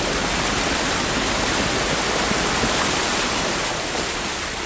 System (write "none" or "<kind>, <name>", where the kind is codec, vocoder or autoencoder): none